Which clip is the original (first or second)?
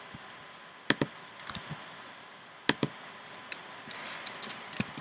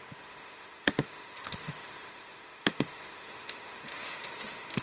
first